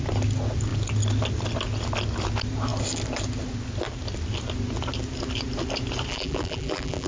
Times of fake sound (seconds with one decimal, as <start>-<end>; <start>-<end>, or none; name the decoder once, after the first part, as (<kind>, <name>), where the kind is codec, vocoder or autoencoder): 6.1-7.1 (vocoder, BigVGAN v2)